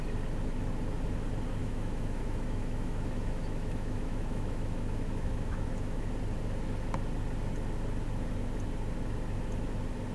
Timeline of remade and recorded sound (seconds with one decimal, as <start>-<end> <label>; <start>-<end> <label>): 0.0-1.6 recorded; 1.6-6.1 remade; 6.1-10.1 recorded

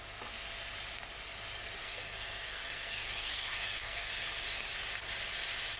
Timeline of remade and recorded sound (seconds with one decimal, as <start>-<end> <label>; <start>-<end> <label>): 0.0-1.8 recorded; 1.8-4.1 remade; 4.1-5.8 recorded

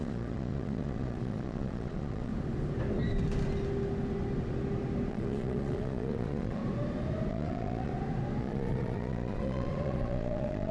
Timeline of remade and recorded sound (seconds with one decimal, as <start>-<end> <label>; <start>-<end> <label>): 0.0-2.3 remade; 2.3-5.1 recorded; 5.1-6.6 remade; 6.6-7.3 recorded; 7.3-7.9 remade; 7.9-8.4 recorded; 8.4-10.7 remade

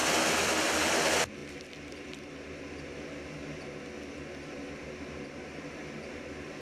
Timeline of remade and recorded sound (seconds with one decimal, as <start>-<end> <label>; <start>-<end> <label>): 0.0-0.8 remade; 0.8-6.6 recorded

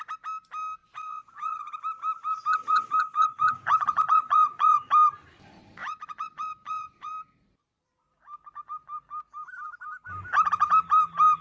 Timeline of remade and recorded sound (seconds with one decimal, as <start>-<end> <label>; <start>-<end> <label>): 0.0-0.8 recorded; 0.8-1.7 remade; 1.7-2.7 recorded; 2.7-4.8 remade; 4.8-5.8 recorded; 5.8-7.1 remade; 7.1-11.4 recorded

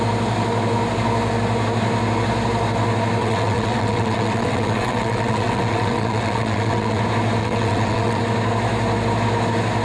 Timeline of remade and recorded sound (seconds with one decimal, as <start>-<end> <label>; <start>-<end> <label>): 0.0-3.2 recorded; 3.2-7.0 remade; 7.0-7.4 recorded; 7.4-8.2 remade; 8.2-9.8 recorded